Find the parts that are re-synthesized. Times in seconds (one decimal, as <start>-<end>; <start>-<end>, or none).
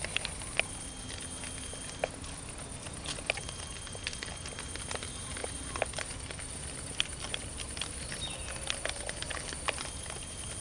none